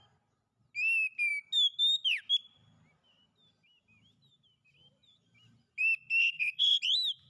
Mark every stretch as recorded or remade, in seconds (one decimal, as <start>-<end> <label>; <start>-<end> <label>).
0.0-6.2 recorded; 6.2-6.8 remade; 6.8-7.3 recorded